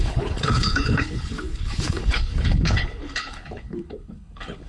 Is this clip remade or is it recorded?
remade